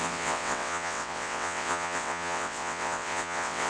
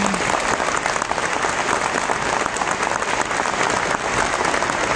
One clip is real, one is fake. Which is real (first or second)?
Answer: second